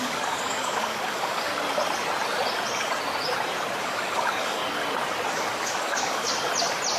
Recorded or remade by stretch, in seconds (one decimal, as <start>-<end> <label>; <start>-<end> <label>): 0.0-1.5 remade; 1.5-3.8 recorded; 3.8-4.6 remade; 4.6-5.3 recorded; 5.3-6.3 remade; 6.3-7.0 recorded